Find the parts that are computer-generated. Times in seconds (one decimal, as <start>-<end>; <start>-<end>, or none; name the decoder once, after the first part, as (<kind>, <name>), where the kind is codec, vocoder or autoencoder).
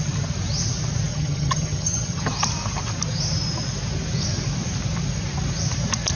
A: 1.1-2.3 (vocoder, HiFi-GAN)